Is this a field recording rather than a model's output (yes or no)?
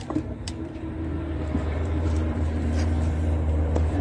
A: no